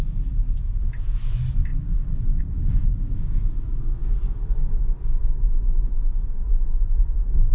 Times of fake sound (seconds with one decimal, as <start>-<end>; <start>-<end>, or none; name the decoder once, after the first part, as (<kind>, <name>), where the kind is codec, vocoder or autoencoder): 6.5-7.5 (vocoder, Vocos)